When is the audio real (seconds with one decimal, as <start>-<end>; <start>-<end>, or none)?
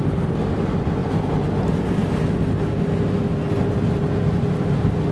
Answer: 0.0-5.1